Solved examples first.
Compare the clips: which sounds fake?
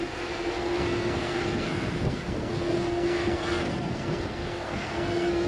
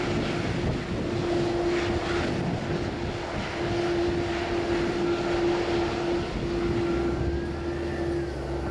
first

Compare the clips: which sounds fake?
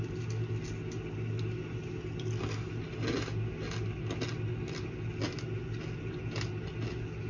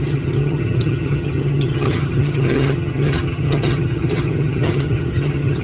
second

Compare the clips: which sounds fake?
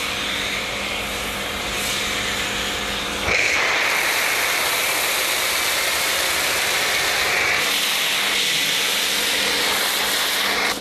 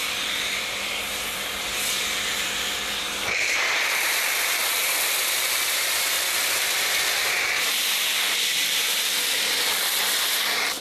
second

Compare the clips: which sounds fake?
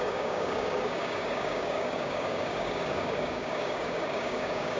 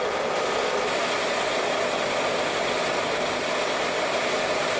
first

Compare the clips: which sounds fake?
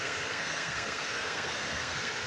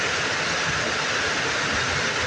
first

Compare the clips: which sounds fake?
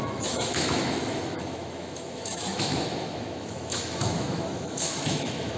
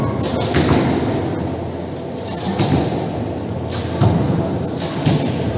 first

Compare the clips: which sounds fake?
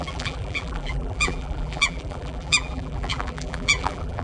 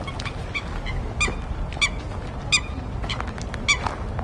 first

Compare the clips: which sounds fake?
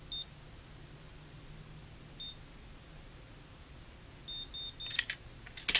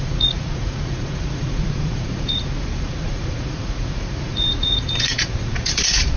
second